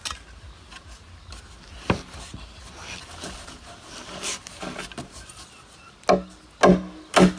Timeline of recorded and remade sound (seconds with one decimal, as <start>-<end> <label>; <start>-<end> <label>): 0.0-7.4 recorded